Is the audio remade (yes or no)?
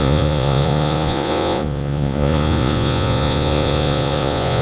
yes